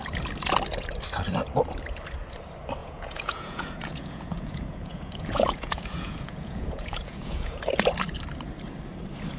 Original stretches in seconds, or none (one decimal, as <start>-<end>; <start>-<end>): 0.0-2.8; 7.6-9.4